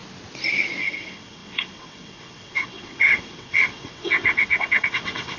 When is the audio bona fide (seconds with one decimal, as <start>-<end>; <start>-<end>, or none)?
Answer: 0.0-0.8